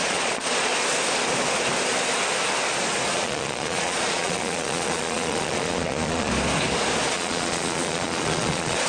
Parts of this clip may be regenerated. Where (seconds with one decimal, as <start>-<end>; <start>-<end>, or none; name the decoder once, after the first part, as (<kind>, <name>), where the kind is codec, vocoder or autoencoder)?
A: 0.0-0.7 (vocoder, Vocos); 3.1-6.3; 7.1-8.9